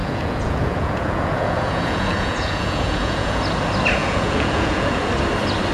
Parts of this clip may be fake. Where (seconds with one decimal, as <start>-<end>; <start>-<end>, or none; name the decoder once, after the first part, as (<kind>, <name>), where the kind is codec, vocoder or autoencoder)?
0.0-3.4 (vocoder, Vocos); 4.0-5.1